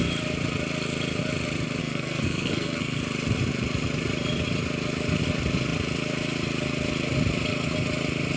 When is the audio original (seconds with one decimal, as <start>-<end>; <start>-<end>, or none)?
0.0-1.8; 3.0-8.4